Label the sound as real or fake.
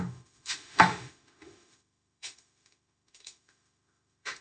fake